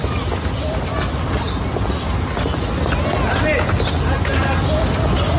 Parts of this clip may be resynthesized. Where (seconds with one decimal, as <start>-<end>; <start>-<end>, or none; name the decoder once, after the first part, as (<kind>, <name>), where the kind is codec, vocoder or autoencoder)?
none

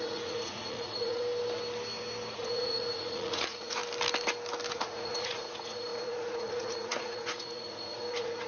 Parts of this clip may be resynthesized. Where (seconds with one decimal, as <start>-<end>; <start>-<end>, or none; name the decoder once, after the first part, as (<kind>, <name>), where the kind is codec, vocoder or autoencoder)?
0.0-1.2 (vocoder, Vocos); 2.3-3.8; 4.7-8.5

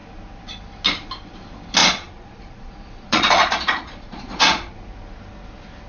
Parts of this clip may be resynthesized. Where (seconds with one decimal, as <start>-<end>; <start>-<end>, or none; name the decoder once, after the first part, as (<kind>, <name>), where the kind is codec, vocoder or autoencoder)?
1.8-4.7 (vocoder, Vocos)

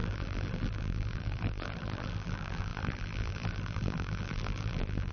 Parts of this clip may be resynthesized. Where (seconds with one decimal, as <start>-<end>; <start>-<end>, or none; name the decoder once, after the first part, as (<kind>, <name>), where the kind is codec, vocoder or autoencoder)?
0.0-5.1 (vocoder, BigVGAN v2)

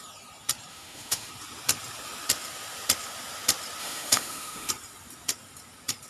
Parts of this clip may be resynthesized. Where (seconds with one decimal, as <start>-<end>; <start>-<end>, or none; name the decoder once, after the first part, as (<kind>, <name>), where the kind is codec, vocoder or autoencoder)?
0.7-1.3 (autoencoder, DAC-VAE); 3.8-4.7

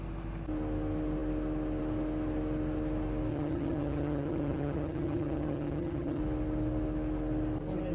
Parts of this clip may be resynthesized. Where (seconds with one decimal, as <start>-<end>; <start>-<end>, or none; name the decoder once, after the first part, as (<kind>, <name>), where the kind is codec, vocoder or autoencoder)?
3.3-6.2 (vocoder, HiFi-GAN)